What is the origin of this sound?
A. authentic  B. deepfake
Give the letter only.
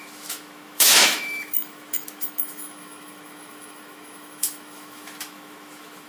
B